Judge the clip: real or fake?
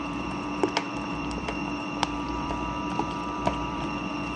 fake